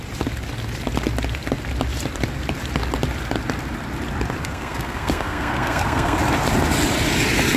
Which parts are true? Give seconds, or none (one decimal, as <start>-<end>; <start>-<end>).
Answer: 0.0-4.4; 6.2-7.6